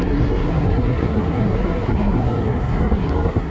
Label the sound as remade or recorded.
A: remade